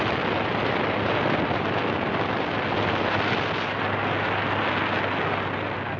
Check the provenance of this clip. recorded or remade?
recorded